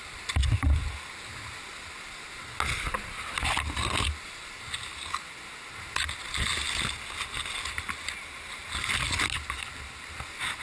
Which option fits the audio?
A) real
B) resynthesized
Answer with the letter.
A